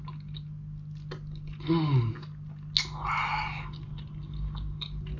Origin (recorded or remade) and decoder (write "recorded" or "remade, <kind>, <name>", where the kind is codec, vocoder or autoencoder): recorded